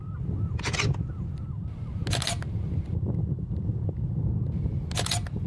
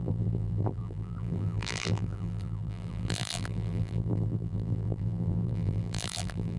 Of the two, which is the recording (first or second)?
first